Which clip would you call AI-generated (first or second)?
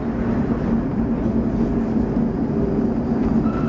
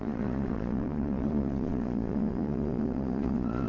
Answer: second